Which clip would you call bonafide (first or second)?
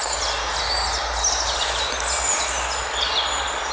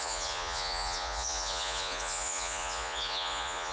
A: first